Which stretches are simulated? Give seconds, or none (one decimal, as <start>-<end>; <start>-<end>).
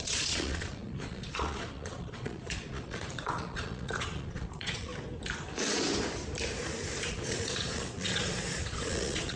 0.0-4.9; 7.1-9.4